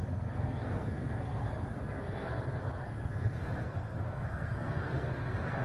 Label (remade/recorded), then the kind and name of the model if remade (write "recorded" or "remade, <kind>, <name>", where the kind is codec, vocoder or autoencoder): remade, codec, SNAC